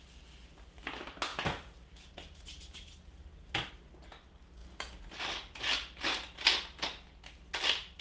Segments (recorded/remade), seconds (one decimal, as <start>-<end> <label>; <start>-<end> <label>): 0.0-8.0 recorded